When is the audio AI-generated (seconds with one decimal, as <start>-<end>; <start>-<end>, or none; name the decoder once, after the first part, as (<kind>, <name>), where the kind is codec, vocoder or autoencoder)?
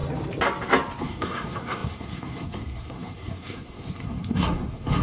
1.0-5.0 (codec, SNAC)